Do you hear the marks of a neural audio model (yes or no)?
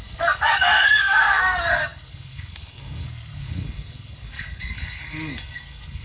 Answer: yes